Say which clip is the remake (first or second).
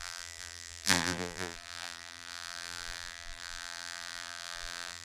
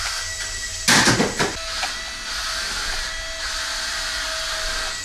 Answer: first